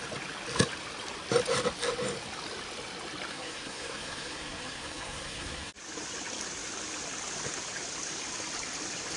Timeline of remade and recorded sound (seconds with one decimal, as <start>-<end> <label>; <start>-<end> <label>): 0.0-3.3 recorded; 3.3-5.7 remade; 5.7-9.2 recorded